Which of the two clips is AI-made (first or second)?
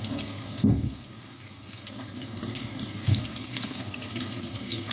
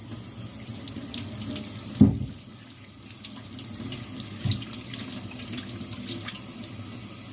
first